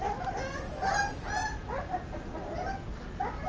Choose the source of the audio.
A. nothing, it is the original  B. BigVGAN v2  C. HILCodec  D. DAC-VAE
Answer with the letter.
A